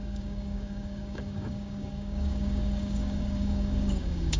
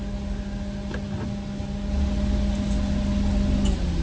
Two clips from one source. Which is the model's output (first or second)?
first